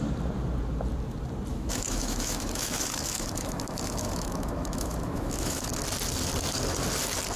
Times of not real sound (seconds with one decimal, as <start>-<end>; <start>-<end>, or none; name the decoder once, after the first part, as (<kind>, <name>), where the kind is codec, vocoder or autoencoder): 1.5-5.7 (autoencoder, DAC-VAE)